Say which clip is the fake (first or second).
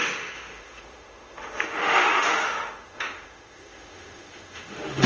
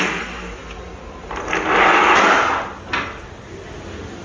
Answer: first